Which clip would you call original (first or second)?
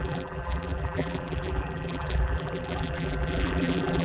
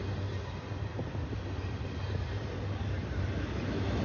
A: second